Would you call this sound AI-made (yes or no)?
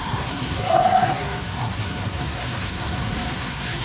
yes